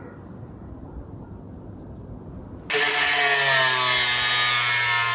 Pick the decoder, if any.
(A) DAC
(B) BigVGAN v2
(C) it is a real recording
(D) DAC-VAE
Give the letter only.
C